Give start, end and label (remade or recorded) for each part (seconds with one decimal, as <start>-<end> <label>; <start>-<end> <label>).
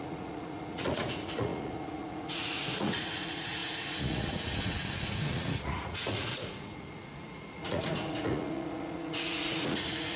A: 0.0-10.2 remade